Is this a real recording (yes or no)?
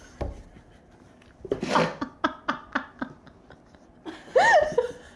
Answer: yes